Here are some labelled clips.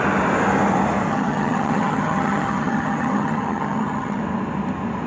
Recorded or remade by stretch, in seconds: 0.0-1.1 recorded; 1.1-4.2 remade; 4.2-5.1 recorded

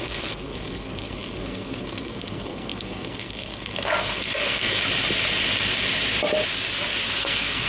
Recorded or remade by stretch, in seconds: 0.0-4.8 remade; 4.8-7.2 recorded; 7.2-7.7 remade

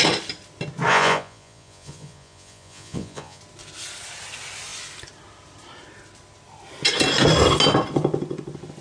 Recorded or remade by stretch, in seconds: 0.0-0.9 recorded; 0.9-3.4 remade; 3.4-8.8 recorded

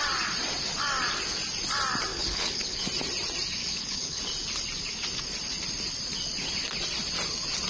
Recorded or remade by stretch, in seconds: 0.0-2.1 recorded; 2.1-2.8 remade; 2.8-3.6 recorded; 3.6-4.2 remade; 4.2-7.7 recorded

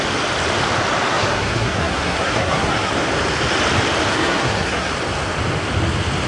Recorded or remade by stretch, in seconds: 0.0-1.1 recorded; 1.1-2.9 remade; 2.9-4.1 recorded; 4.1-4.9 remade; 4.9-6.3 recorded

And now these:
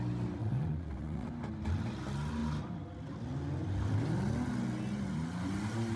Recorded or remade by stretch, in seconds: 0.0-0.4 recorded; 0.4-1.3 remade; 1.3-6.0 recorded

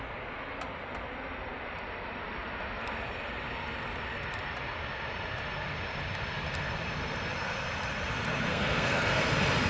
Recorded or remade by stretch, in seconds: 0.0-8.5 recorded; 8.5-9.2 remade; 9.2-9.7 recorded